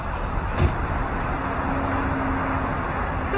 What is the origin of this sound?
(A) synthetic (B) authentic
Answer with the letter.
B